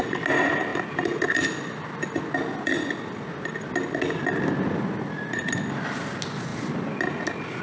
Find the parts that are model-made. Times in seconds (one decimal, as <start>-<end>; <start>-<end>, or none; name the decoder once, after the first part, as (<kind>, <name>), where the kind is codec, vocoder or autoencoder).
none